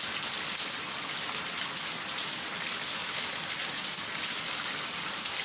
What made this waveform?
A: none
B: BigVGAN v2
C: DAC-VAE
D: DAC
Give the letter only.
A